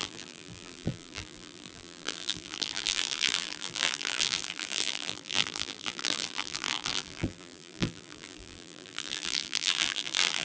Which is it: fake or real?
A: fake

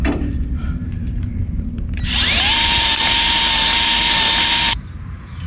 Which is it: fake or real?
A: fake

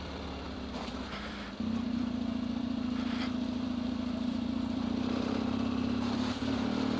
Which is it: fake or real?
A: fake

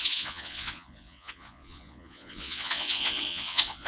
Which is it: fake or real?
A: fake